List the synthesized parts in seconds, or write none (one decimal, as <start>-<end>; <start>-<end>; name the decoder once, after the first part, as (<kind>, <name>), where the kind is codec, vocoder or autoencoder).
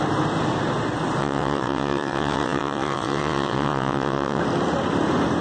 1.2-4.4 (vocoder, WaveNeXt)